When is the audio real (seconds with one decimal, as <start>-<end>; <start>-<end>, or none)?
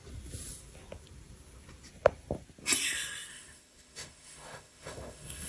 0.0-3.3